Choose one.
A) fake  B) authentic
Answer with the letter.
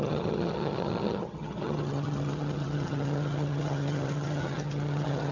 A